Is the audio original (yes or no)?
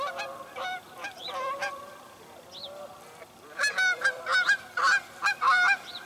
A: no